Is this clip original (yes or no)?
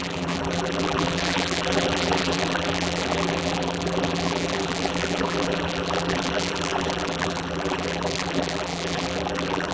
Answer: no